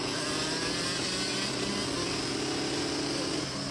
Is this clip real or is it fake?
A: real